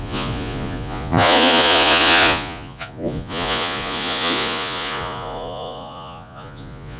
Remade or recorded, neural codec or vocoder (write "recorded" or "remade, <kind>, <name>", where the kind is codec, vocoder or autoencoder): remade, vocoder, Vocos